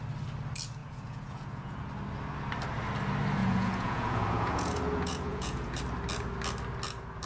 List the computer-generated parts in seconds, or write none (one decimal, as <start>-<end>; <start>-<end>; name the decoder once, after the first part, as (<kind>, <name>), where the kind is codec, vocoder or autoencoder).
0.8-1.8 (vocoder, Vocos); 3.4-5.8